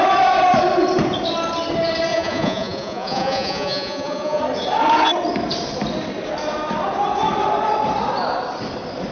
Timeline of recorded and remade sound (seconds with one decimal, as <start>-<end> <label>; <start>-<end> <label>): 0.0-2.1 recorded; 2.1-4.4 remade; 4.4-9.1 recorded